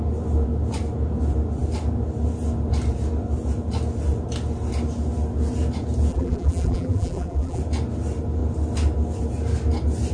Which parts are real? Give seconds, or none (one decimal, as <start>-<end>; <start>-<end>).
0.0-6.1; 7.6-10.1